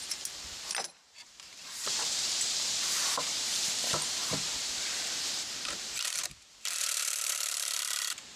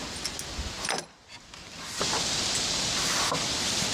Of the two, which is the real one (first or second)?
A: second